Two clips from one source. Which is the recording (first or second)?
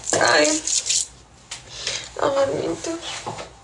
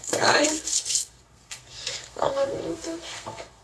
first